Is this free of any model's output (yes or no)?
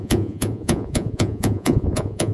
no